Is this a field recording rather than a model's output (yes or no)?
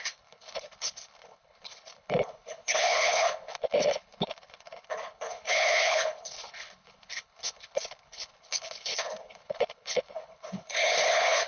no